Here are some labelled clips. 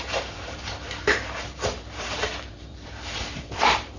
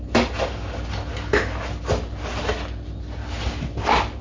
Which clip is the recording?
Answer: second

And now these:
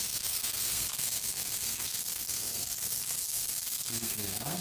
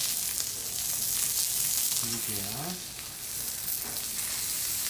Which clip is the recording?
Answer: second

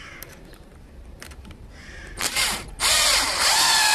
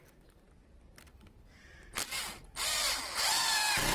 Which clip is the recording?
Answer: second